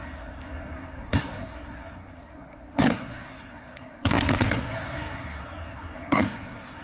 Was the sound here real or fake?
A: fake